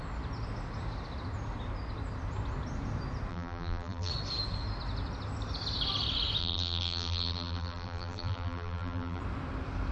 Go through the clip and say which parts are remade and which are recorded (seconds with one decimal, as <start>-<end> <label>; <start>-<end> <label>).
0.0-3.3 recorded; 3.3-4.1 remade; 4.1-6.4 recorded; 6.4-9.2 remade; 9.2-9.9 recorded